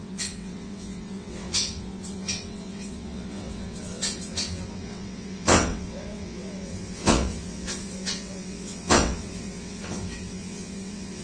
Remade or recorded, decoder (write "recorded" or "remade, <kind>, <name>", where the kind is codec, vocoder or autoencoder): remade, vocoder, WaveNeXt